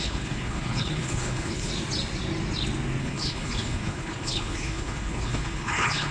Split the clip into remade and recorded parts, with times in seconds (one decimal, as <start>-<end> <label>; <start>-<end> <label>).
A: 0.0-1.7 remade; 1.7-3.0 recorded; 3.0-6.1 remade